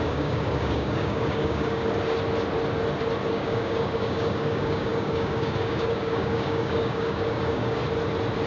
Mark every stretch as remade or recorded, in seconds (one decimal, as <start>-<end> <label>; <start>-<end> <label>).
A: 0.0-1.8 remade; 1.8-3.3 recorded; 3.3-7.8 remade; 7.8-8.5 recorded

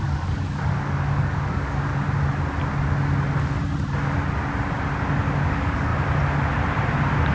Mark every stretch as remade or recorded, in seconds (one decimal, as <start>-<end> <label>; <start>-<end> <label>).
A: 0.0-1.9 remade; 1.9-5.5 recorded; 5.5-5.9 remade; 5.9-7.3 recorded

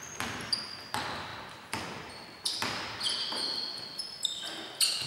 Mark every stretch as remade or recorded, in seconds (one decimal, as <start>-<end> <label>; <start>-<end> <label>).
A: 0.0-5.1 recorded

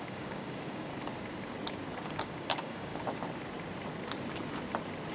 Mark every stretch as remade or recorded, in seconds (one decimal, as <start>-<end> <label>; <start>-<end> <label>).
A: 0.0-0.9 remade; 0.9-2.1 recorded; 2.1-2.9 remade; 2.9-5.1 recorded